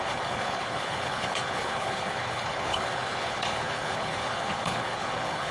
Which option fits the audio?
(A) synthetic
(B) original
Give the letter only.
A